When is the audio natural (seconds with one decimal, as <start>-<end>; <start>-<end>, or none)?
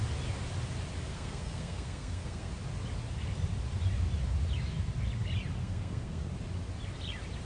0.0-1.1; 2.5-5.6; 6.3-7.4